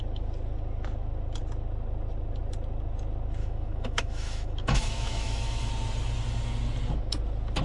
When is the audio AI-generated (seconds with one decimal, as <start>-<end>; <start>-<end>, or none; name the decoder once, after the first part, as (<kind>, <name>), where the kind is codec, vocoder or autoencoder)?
3.4-5.7 (autoencoder, DAC-VAE)